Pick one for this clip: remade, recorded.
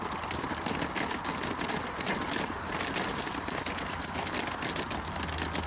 recorded